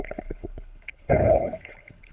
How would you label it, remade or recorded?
remade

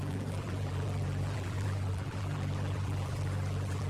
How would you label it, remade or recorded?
remade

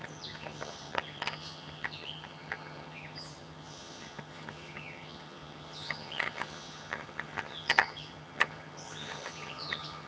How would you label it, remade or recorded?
remade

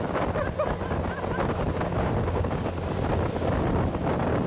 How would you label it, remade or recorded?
recorded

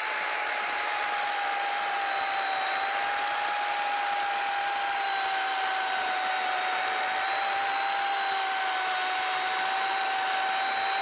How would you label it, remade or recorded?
recorded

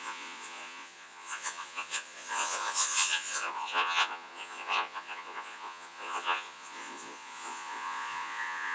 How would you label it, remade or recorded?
remade